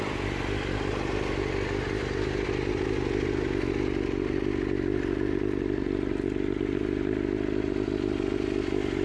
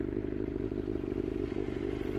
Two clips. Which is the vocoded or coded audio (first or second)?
second